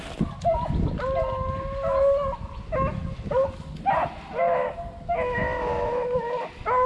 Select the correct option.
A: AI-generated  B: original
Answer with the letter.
B